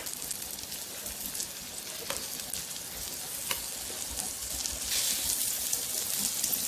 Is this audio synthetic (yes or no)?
no